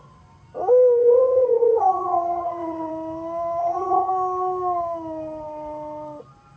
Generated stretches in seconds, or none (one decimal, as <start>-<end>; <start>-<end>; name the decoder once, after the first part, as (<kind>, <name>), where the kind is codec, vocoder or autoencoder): 1.0-2.9 (vocoder, HiFi-GAN); 3.6-4.1